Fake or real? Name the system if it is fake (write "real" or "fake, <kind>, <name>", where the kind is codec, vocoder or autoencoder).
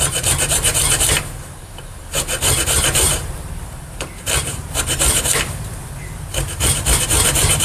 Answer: fake, vocoder, BigVGAN v2